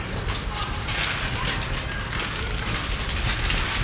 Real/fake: real